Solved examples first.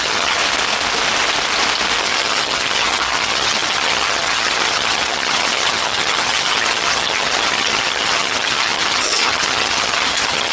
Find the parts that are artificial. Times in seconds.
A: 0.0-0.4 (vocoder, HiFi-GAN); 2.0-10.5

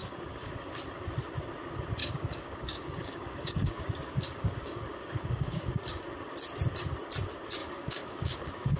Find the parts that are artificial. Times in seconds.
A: 0.0-0.7 (codec, DAC); 2.0-6.0; 7.6-8.8

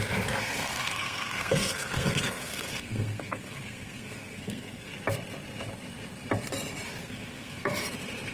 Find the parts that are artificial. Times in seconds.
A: 0.4-4.9 (codec, SNAC); 7.0-7.7

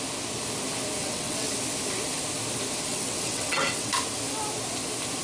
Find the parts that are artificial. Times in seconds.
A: 1.0-1.5 (vocoder, WaveNeXt); 2.9-3.9

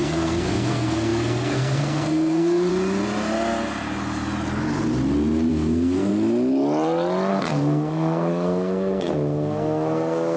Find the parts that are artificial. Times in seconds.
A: 0.0-2.7 (codec, SNAC); 5.5-6.1; 7.3-10.4

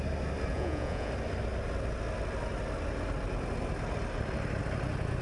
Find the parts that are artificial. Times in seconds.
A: 0.5-1.1 (vocoder, Vocos)